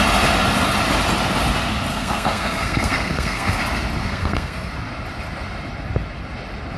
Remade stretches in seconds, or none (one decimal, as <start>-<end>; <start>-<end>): 1.9-3.6; 4.0-4.7